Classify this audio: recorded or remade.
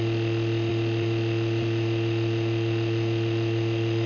remade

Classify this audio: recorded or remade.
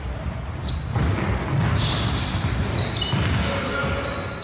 recorded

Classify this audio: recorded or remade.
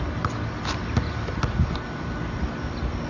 recorded